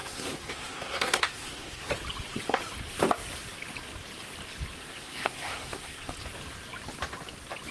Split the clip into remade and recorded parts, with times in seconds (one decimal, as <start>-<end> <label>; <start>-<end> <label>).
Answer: 0.0-1.9 remade; 1.9-4.8 recorded; 4.8-6.1 remade; 6.1-7.7 recorded